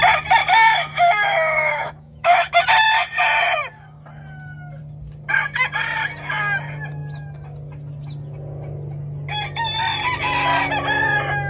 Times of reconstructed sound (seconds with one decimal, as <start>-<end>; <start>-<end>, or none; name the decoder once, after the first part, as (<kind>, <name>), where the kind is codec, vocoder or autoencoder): 0.4-2.6 (autoencoder, DAC-VAE)